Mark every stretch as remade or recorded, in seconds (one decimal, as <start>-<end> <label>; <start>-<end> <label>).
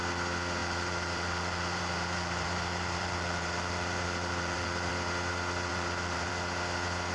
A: 0.0-0.6 recorded; 0.6-4.9 remade; 4.9-5.7 recorded; 5.7-6.3 remade; 6.3-7.1 recorded